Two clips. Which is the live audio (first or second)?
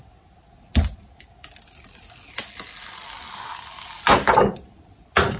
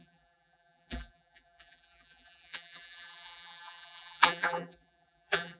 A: first